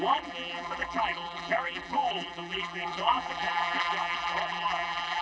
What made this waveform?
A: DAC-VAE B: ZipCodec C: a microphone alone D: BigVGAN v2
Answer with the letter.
D